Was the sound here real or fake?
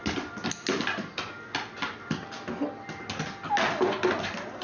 real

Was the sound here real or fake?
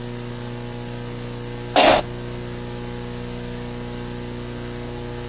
real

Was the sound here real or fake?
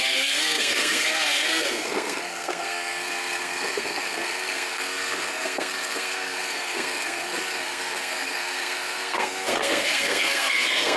fake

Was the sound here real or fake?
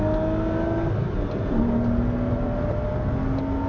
real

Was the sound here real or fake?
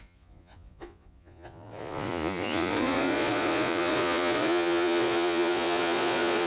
fake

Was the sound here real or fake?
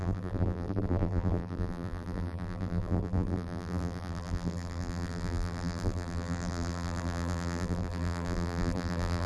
fake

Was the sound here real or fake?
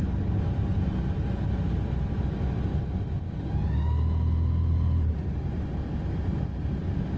real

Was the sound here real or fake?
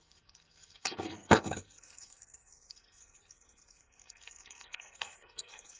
fake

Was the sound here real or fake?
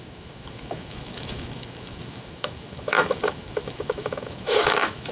fake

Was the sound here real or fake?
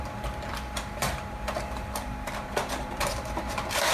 fake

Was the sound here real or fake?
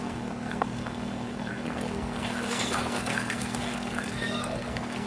fake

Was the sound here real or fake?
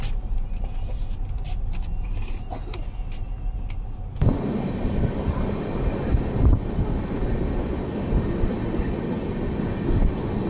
real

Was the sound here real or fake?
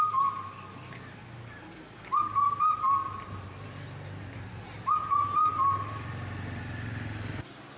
real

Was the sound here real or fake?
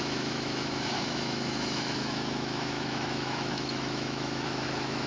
fake